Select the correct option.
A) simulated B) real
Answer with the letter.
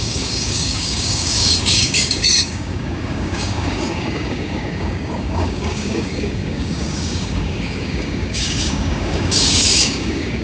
A